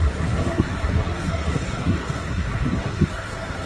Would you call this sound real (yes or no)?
no